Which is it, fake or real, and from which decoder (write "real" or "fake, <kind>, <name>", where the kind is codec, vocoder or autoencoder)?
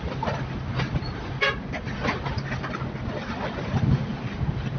real